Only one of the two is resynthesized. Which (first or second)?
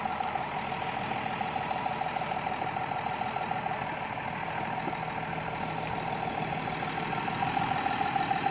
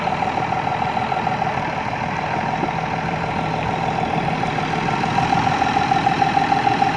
second